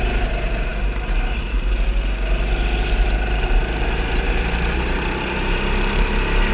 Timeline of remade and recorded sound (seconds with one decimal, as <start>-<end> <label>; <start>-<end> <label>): 0.0-6.5 recorded